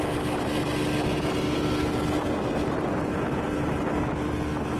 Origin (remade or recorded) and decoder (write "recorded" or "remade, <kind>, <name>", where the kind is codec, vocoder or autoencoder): recorded